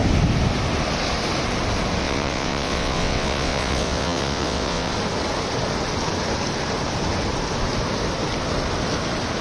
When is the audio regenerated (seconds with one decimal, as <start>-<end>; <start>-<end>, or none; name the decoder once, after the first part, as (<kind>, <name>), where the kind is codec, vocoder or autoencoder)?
2.0-4.9 (vocoder, WaveNeXt)